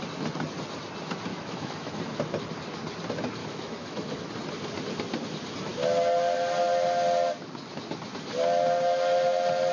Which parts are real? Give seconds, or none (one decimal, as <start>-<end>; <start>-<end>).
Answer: 0.0-1.3; 2.0-3.4; 4.3-9.7